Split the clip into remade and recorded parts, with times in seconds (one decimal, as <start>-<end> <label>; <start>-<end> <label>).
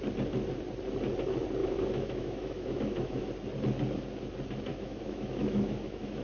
0.0-1.6 recorded; 1.6-3.3 remade; 3.3-4.7 recorded; 4.7-6.2 remade